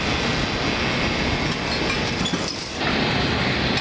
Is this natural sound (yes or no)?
yes